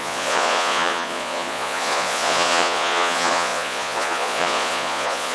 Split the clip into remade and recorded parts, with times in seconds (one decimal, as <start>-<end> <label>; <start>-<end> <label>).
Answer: 0.0-5.3 remade